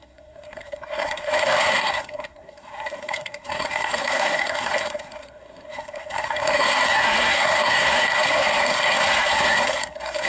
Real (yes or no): no